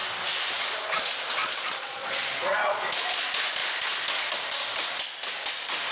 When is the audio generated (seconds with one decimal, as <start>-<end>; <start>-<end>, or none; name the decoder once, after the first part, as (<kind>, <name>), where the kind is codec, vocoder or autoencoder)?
1.4-2.8 (vocoder, Vocos)